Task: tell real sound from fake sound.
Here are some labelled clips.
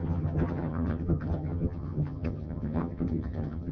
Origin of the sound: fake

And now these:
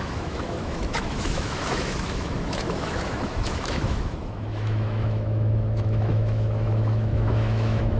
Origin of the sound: fake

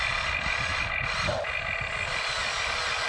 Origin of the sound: real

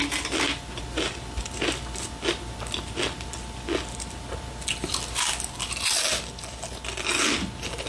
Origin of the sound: real